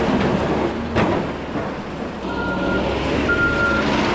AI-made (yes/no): no